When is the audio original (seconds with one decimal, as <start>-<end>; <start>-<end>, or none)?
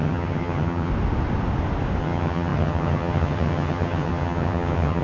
0.9-2.0